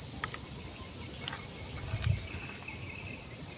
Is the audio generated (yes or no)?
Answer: no